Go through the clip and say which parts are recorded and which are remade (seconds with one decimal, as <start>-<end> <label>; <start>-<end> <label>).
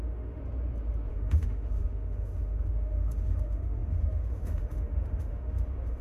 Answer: 0.0-0.4 remade; 0.4-1.1 recorded; 1.1-6.0 remade